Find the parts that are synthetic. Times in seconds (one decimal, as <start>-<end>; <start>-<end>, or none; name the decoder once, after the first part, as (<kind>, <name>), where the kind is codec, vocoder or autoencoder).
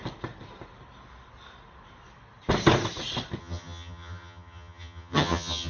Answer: 3.4-5.7 (vocoder, HiFi-GAN)